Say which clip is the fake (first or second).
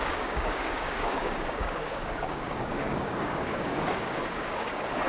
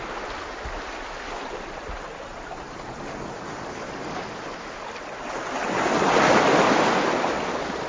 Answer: first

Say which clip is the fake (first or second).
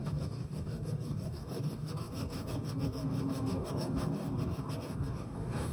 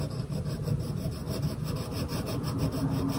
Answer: first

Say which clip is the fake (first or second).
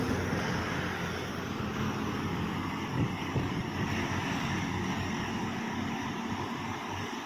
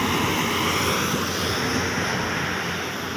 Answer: first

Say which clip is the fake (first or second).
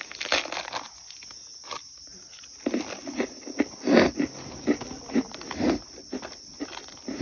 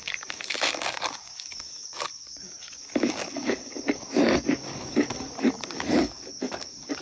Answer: second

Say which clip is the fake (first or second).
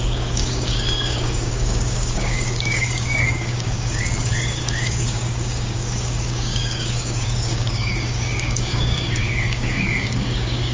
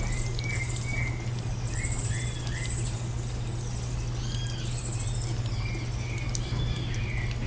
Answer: first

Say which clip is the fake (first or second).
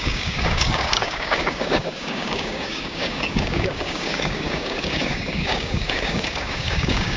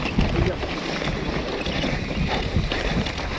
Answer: first